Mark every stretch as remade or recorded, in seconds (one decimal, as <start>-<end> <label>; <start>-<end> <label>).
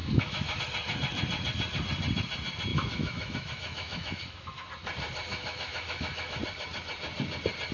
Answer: 0.0-0.6 remade; 0.6-2.7 recorded; 2.7-4.7 remade; 4.7-5.3 recorded; 5.3-6.4 remade; 6.4-7.7 recorded